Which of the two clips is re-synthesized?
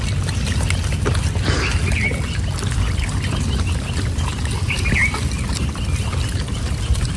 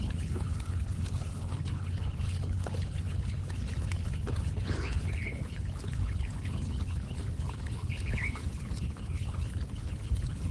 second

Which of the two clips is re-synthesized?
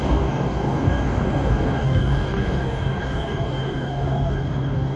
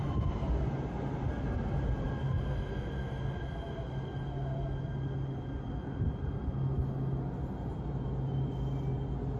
first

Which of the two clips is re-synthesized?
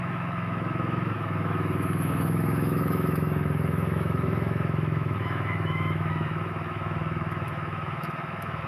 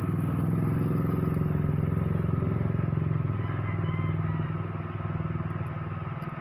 first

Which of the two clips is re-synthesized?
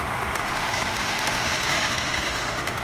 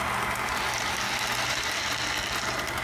first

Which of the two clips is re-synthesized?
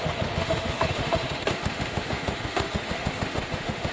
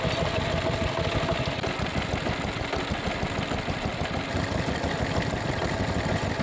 first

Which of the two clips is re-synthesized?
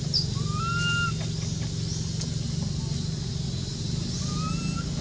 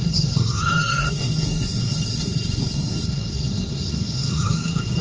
second